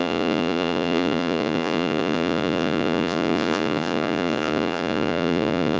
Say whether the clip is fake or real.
fake